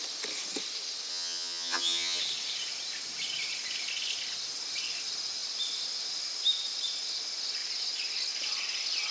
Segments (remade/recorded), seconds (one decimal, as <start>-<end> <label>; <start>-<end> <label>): 0.0-1.1 recorded; 1.1-2.2 remade; 2.2-9.1 recorded